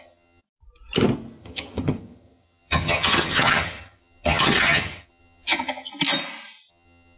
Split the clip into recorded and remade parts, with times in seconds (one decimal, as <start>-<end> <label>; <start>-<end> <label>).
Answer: 0.0-0.4 remade; 0.4-1.4 recorded; 1.4-5.9 remade; 5.9-6.7 recorded; 6.7-7.2 remade